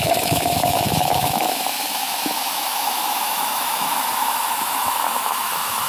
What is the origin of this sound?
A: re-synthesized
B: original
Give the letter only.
A